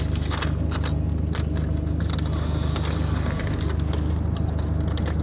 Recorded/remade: recorded